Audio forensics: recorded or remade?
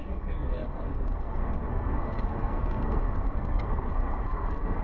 remade